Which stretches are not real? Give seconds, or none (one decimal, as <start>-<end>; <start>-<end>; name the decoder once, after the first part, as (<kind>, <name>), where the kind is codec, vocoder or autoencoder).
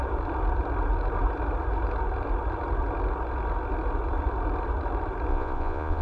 5.3-6.0 (vocoder, Vocos)